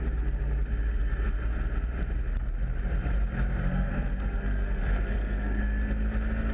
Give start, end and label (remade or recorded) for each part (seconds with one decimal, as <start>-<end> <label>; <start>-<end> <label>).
0.0-3.6 recorded; 3.6-5.6 remade; 5.6-6.5 recorded